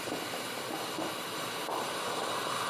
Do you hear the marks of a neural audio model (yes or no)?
no